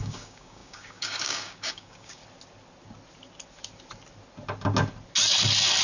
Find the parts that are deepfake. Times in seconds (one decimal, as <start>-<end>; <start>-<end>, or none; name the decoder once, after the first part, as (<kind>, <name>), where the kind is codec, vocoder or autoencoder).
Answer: 0.0-2.2 (codec, DAC)